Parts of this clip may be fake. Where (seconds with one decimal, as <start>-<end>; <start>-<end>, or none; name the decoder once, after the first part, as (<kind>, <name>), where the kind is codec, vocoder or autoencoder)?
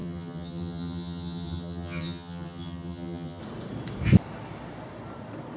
0.0-3.4 (vocoder, HiFi-GAN)